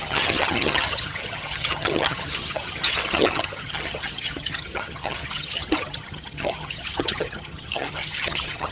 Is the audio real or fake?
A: fake